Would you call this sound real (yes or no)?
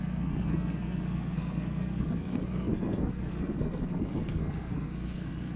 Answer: no